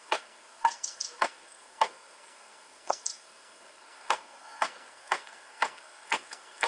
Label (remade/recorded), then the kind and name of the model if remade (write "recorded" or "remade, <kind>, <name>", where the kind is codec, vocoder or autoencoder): remade, codec, SNAC